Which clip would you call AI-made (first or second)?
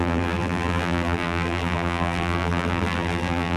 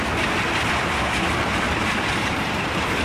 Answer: first